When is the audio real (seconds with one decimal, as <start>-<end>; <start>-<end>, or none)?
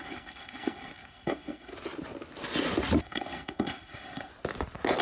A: 1.7-3.0; 4.3-5.0